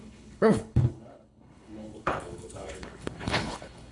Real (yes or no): no